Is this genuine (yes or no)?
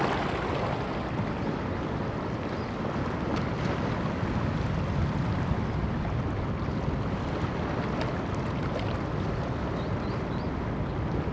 yes